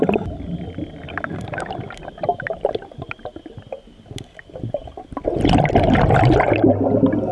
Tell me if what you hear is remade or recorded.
recorded